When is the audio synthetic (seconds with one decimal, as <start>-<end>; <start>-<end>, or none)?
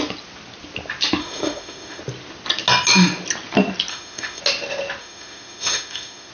1.2-2.0; 3.9-4.4; 5.0-6.3